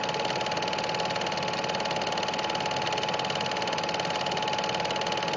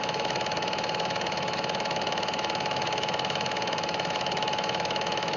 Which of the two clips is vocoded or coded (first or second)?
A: second